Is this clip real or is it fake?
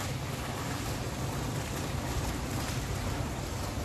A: real